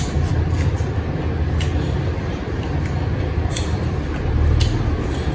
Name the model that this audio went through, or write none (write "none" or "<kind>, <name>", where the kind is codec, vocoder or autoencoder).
none